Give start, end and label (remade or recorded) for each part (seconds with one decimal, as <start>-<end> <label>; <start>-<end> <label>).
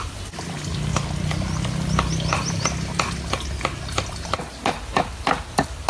0.0-5.9 recorded